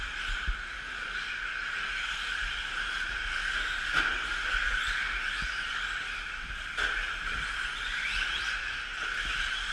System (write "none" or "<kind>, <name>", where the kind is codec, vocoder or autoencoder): none